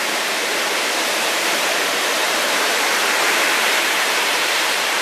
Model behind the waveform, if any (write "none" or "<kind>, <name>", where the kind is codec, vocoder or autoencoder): vocoder, BigVGAN v2